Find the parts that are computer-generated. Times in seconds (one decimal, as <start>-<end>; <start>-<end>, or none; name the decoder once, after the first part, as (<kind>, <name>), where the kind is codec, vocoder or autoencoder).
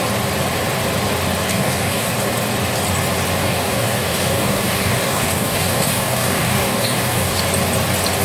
1.5-2.1 (codec, DAC); 3.4-7.4